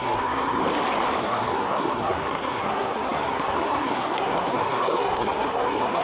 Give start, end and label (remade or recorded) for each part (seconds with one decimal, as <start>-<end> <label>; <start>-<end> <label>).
0.0-0.6 remade; 0.6-1.2 recorded; 1.2-6.0 remade